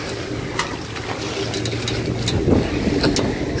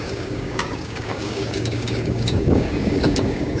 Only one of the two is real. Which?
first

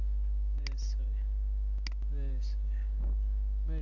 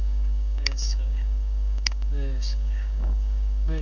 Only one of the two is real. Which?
first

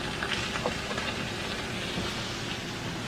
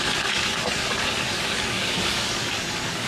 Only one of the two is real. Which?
first